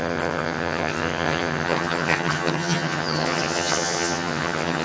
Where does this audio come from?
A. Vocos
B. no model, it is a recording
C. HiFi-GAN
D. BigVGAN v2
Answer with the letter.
C